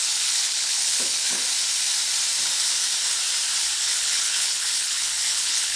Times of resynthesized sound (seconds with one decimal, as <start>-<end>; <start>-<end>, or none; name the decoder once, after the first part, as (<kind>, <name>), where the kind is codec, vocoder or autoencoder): 0.0-1.4 (codec, HILCodec); 3.8-5.8